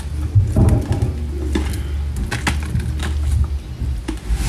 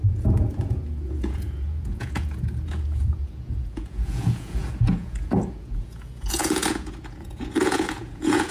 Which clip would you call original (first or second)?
first